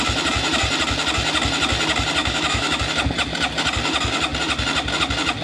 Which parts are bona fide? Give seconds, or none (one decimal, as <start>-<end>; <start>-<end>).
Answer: 0.0-2.2; 2.8-5.4